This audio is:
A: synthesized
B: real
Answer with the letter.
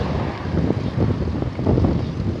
B